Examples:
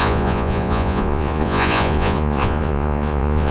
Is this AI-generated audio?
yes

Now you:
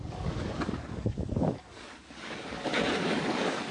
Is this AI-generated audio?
yes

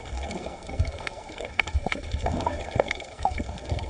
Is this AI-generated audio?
yes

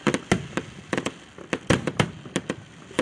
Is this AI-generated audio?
no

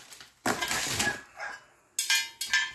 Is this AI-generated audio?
no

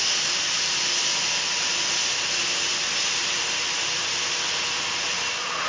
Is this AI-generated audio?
no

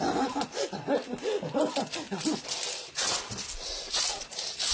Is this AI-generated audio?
no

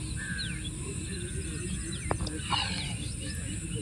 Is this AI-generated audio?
no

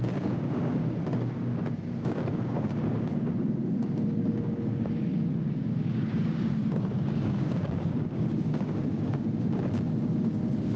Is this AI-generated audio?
yes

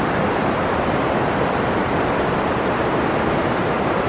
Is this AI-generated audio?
no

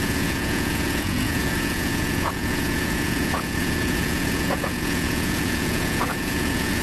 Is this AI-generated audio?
yes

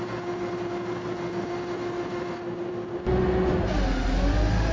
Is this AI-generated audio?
no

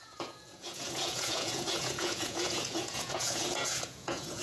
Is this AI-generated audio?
yes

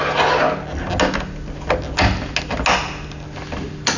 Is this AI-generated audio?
no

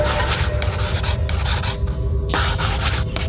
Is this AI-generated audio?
no